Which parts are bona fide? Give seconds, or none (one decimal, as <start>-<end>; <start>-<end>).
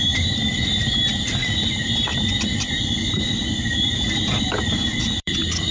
none